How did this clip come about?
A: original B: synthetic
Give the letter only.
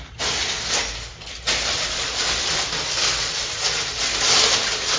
A